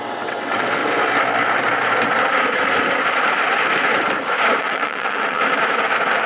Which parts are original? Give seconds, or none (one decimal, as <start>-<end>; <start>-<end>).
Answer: 0.8-4.6; 5.4-6.3